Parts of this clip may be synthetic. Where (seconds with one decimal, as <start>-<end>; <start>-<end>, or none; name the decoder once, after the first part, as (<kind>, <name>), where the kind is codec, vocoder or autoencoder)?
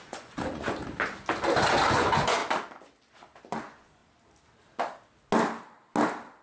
0.0-0.8 (vocoder, Vocos); 1.9-2.4; 3.6-4.0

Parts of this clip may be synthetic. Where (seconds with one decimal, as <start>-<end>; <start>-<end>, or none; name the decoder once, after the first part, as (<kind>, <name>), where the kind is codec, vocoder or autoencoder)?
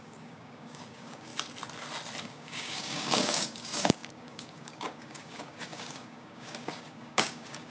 0.0-1.3 (codec, DAC); 2.2-7.7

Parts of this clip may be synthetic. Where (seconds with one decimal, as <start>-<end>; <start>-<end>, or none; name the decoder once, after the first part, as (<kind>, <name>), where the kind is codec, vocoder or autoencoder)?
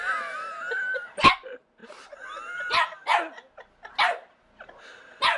none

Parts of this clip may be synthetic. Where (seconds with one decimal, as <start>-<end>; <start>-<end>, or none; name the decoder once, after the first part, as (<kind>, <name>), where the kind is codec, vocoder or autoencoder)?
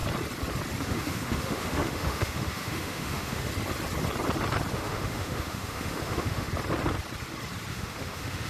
0.8-3.5 (autoencoder, DAC-VAE); 4.7-6.5; 7.7-8.5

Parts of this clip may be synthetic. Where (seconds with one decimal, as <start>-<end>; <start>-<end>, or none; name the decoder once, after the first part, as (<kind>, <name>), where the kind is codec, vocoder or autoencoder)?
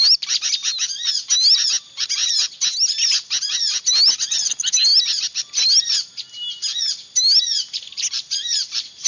none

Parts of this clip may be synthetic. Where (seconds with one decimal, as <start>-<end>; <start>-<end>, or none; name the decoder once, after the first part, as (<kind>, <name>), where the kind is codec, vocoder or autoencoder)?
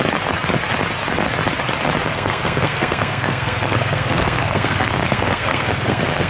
2.1-6.3 (codec, SNAC)